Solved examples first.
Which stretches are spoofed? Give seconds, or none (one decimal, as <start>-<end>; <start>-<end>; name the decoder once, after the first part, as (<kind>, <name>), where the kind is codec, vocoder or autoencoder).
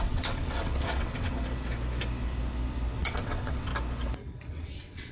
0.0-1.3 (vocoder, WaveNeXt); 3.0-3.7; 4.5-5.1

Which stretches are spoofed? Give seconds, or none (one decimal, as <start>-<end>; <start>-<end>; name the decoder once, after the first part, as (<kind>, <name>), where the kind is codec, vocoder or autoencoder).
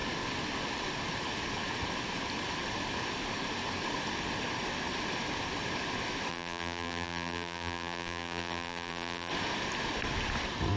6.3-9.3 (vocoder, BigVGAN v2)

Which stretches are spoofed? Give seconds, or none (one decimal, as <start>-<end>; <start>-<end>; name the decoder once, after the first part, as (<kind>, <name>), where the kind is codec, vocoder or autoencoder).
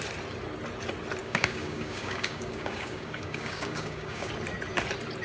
1.2-4.3 (codec, DAC)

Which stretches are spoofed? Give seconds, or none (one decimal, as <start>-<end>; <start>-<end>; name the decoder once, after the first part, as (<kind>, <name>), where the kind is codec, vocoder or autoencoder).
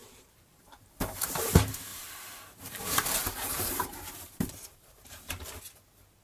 0.0-1.5 (vocoder, BigVGAN v2); 1.9-5.4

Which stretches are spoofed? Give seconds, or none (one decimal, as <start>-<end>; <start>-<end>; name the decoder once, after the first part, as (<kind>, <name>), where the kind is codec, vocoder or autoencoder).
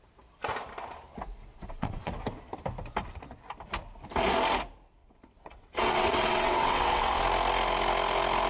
1.5-2.1 (vocoder, WaveNeXt); 5.0-7.2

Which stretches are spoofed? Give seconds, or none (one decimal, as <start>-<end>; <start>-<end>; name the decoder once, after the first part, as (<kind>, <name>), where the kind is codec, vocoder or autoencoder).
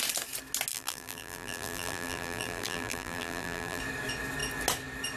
0.7-3.8 (vocoder, BigVGAN v2)